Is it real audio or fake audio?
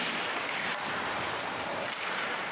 fake